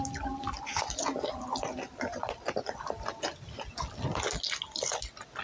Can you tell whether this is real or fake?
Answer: real